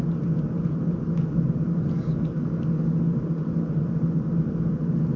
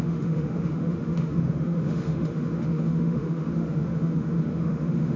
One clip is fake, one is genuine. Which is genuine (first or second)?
first